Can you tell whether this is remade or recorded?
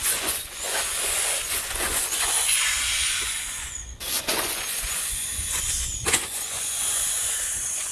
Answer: remade